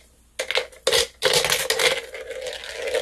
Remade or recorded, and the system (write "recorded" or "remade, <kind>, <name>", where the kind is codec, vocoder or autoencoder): recorded